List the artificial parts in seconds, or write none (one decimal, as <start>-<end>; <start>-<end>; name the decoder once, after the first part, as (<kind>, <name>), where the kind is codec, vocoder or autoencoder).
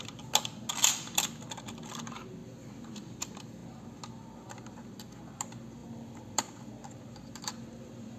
2.4-3.2 (vocoder, BigVGAN v2); 5.8-6.7